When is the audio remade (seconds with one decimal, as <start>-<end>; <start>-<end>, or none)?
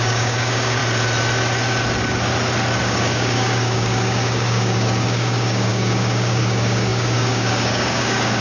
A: 0.0-0.8; 2.8-8.4